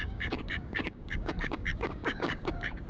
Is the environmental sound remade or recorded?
remade